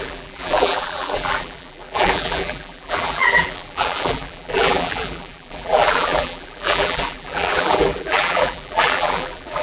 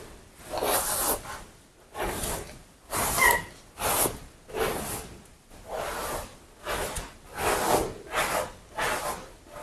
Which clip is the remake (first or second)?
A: first